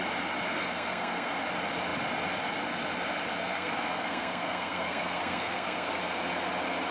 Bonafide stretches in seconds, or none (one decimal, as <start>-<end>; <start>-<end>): 0.0-0.5; 1.3-3.4; 6.0-6.9